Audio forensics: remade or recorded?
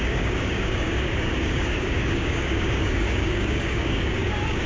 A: remade